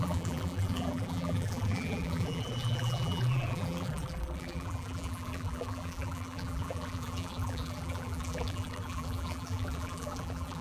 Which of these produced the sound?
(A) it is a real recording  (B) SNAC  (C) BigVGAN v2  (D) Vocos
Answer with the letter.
C